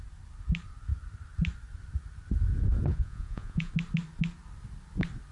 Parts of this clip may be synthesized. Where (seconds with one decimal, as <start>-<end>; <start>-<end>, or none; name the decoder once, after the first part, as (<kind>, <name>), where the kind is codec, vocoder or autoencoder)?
2.9-3.7 (vocoder, Vocos)